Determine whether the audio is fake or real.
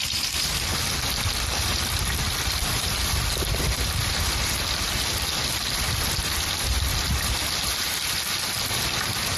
fake